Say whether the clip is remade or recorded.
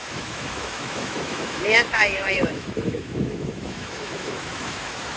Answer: remade